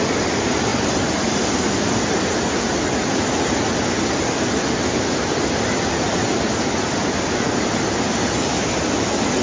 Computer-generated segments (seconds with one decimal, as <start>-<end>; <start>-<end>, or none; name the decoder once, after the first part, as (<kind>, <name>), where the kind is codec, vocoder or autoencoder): none